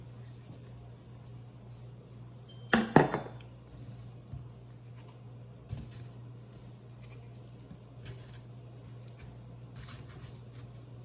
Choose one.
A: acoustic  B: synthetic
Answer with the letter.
A